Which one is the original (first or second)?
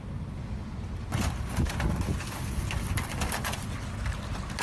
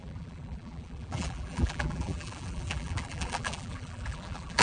first